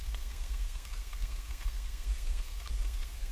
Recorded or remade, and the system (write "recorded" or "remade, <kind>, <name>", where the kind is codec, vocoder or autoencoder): remade, codec, SNAC